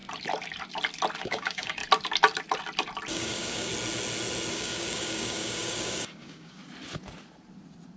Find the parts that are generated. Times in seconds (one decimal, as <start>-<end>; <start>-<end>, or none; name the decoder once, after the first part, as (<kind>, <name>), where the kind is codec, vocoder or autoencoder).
1.2-1.8 (codec, DAC); 3.1-3.7; 4.5-6.6